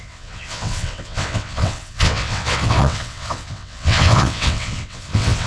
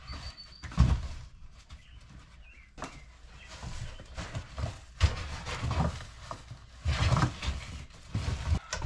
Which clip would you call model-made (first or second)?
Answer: first